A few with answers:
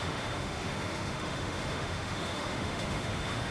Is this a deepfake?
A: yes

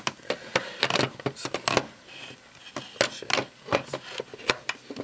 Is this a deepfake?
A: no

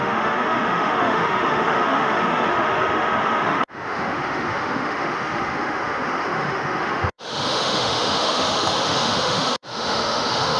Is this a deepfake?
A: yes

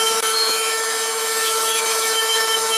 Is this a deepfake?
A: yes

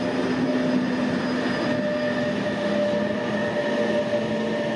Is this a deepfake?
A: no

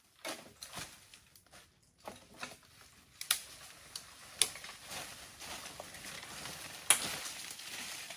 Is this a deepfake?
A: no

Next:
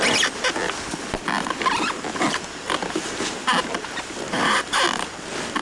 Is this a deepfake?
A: no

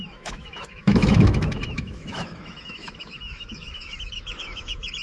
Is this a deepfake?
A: yes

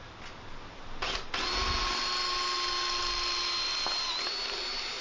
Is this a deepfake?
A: no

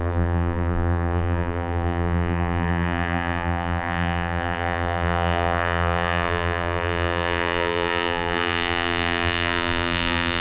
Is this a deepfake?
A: yes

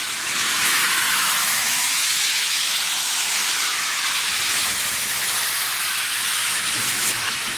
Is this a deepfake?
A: yes